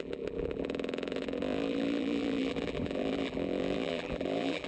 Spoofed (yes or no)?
yes